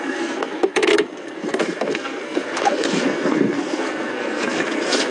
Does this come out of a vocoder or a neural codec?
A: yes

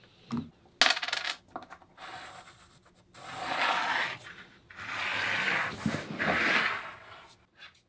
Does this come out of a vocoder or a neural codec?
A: no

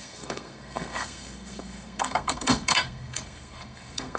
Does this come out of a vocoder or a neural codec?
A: yes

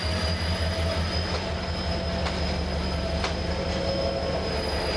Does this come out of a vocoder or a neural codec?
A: no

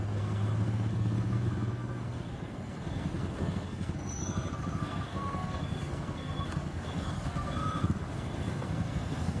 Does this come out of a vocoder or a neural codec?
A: yes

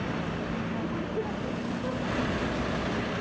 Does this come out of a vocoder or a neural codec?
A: no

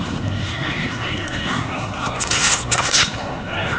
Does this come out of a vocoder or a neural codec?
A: yes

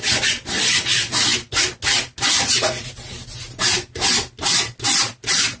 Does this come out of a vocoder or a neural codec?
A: no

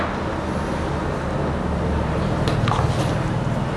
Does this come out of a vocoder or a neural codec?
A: no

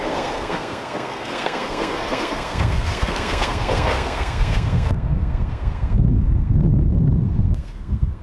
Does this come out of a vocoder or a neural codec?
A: yes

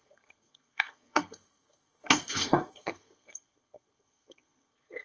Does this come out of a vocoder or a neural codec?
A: yes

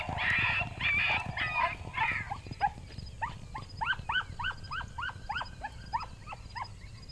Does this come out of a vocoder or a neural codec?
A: no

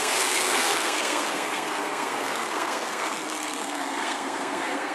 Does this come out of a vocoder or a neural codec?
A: yes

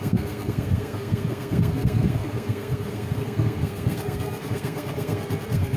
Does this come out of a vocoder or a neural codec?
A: yes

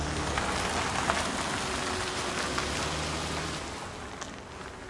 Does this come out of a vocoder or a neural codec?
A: no